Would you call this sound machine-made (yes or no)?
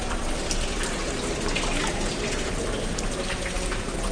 no